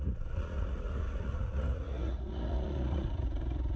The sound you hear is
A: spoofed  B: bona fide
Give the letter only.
A